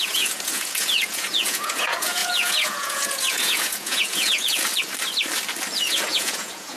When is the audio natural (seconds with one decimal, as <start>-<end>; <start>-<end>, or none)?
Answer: 4.7-5.8